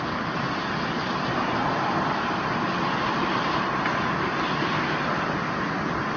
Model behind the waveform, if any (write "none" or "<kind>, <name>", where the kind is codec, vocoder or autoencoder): none